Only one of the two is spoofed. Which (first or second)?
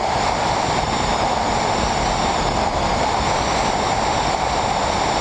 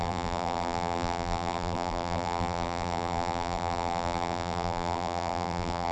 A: second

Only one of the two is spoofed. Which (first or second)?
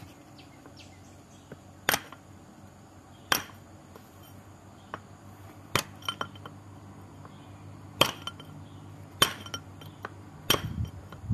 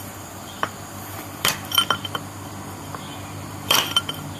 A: second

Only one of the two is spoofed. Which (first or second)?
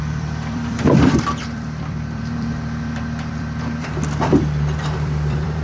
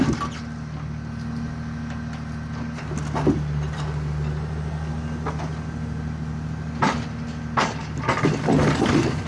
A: first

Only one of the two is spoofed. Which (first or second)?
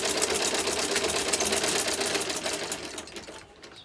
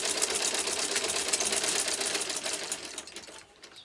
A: second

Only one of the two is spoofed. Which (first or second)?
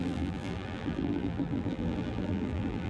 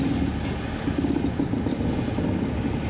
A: first